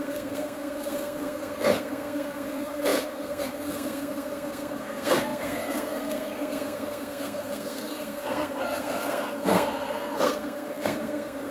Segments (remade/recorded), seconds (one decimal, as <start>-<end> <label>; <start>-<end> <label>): 0.0-11.5 remade